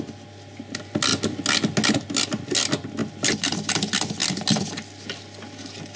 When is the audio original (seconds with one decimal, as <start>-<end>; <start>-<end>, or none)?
0.0-6.0